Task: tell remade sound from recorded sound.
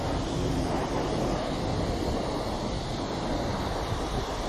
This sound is recorded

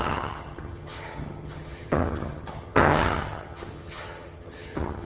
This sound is remade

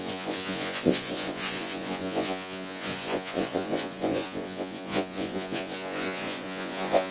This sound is remade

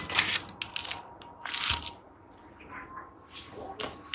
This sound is recorded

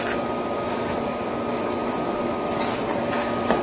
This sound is recorded